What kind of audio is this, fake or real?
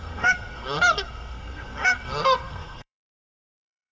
fake